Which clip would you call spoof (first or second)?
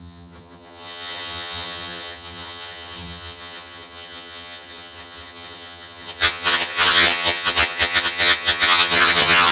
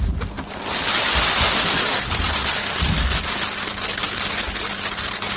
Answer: first